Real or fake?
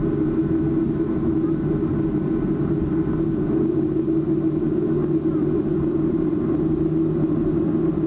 real